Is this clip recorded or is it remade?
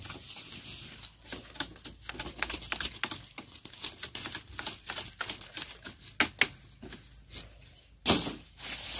recorded